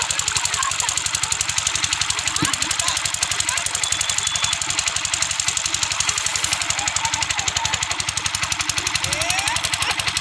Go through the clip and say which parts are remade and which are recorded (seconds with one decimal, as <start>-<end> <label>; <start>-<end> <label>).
0.0-10.2 recorded